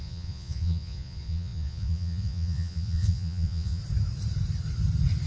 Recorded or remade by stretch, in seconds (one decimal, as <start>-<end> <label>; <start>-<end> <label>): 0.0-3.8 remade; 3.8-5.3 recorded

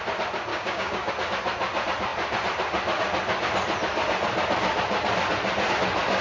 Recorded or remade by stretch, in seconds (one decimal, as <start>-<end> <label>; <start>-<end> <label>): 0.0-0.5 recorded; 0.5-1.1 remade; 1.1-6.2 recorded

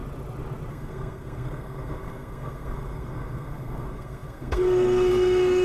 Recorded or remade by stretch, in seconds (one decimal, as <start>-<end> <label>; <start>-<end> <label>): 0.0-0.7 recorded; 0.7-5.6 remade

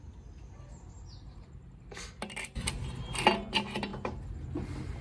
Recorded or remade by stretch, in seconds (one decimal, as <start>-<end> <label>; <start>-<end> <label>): 0.0-5.0 recorded